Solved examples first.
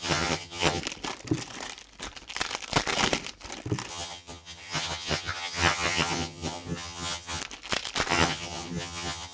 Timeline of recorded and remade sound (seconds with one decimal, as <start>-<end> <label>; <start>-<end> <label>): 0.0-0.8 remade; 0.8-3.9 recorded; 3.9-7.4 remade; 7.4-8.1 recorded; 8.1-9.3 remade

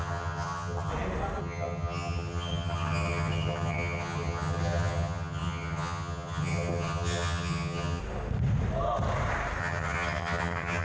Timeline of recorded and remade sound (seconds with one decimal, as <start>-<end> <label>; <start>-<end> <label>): 0.0-0.9 remade; 0.9-1.4 recorded; 1.4-8.0 remade; 8.0-9.6 recorded; 9.6-10.8 remade

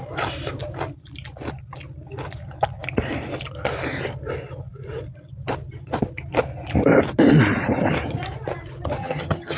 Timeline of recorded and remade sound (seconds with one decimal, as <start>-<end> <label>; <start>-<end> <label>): 0.0-9.0 recorded; 9.0-9.6 remade

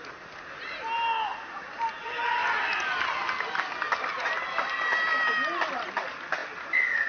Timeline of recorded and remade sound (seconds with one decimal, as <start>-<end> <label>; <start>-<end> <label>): 0.0-7.1 recorded

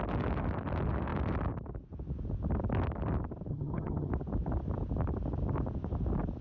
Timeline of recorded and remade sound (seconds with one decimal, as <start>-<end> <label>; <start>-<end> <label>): 0.0-3.5 recorded; 3.5-4.1 remade; 4.1-6.4 recorded